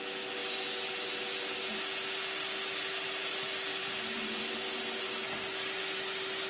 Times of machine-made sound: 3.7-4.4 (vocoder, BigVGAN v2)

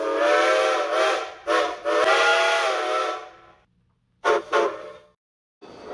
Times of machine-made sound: none

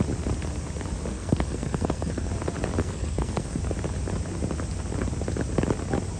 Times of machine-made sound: 1.1-2.3 (codec, SNAC); 2.8-3.6